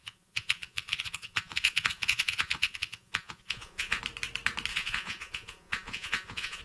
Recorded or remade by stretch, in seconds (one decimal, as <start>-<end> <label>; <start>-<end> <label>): 0.0-4.0 remade; 4.0-4.7 recorded; 4.7-6.6 remade